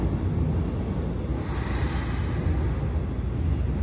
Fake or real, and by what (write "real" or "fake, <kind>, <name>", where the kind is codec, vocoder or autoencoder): real